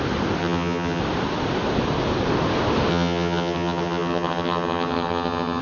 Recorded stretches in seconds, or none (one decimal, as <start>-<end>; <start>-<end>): 0.0-0.4; 1.0-2.9